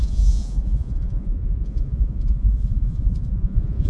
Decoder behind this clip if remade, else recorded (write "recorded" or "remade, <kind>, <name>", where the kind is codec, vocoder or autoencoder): remade, vocoder, Vocos